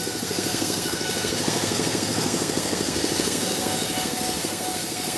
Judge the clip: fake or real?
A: fake